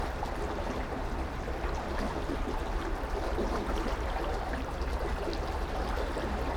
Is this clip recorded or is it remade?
recorded